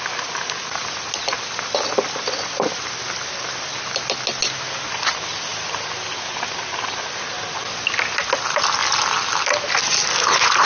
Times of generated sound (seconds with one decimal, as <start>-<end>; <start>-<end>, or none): none